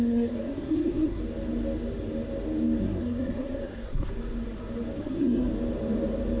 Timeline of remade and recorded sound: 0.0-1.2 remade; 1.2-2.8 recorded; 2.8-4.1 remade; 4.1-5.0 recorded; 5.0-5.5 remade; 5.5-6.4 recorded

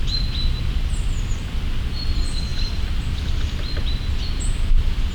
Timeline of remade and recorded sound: 0.0-2.5 recorded; 2.5-3.0 remade; 3.0-5.1 recorded

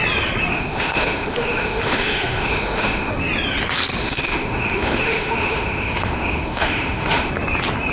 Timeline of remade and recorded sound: 0.0-0.5 recorded; 0.5-3.1 remade; 3.1-4.0 recorded; 4.0-7.3 remade; 7.3-7.9 recorded

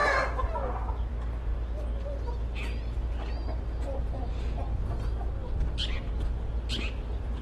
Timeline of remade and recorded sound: 0.0-7.4 recorded

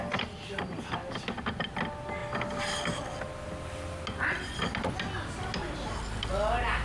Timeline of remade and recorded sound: 0.0-6.8 recorded

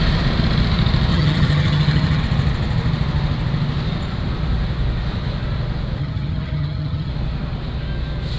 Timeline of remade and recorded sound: 0.0-1.1 recorded; 1.1-2.2 remade; 2.2-6.0 recorded; 6.0-7.1 remade; 7.1-8.4 recorded